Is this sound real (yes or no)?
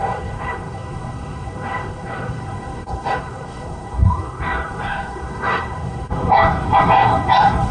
no